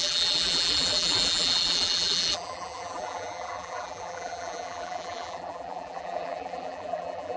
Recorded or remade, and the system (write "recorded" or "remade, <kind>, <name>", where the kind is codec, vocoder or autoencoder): remade, vocoder, BigVGAN v2